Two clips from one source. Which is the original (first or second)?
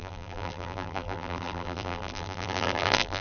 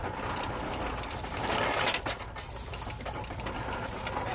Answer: second